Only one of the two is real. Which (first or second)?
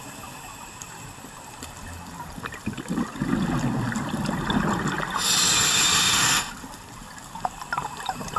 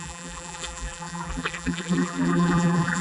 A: first